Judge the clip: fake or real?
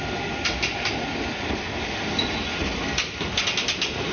real